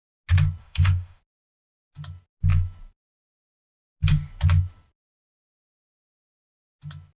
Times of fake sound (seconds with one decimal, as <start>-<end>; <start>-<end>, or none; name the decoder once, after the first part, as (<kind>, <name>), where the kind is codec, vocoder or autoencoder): 0.6-1.2 (autoencoder, DAC-VAE)